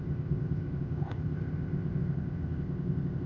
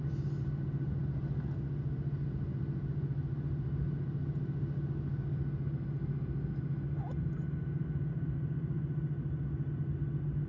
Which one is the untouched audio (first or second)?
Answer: second